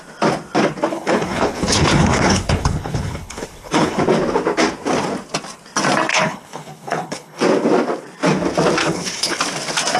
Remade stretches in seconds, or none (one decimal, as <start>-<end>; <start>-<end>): 0.9-4.0; 6.1-7.4; 8.8-9.4